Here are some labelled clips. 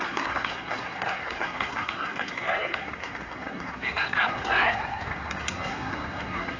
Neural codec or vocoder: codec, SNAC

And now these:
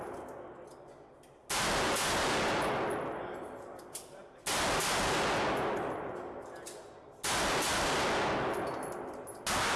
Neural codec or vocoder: none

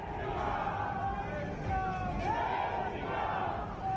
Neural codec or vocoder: none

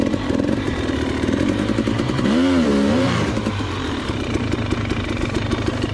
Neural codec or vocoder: vocoder, BigVGAN v2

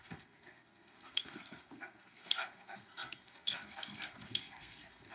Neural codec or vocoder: codec, SNAC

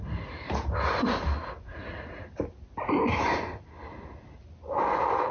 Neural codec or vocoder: none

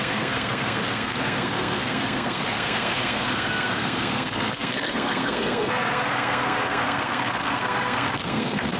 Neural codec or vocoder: codec, SNAC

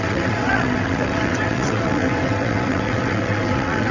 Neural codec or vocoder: vocoder, WaveNeXt